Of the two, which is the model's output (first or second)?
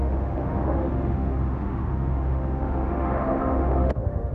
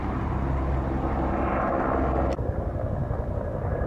first